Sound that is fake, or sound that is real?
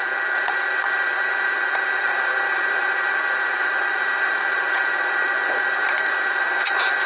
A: fake